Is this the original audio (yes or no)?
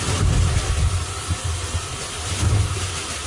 no